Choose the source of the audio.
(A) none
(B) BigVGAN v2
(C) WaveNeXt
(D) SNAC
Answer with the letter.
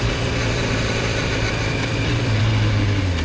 B